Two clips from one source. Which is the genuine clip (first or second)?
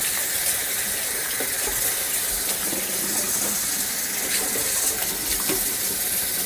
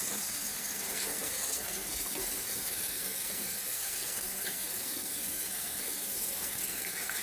first